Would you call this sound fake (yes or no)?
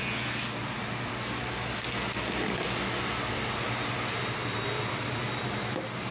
no